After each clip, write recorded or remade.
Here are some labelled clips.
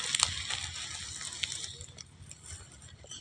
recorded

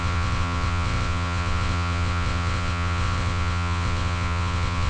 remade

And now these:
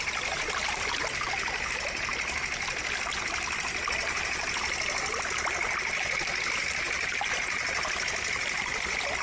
recorded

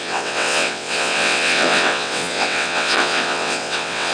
remade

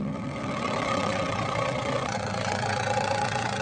remade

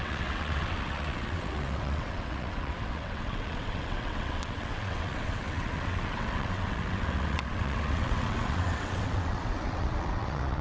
remade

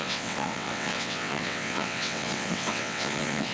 remade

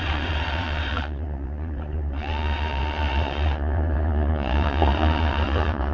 remade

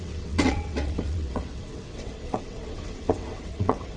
remade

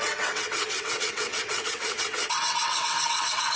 remade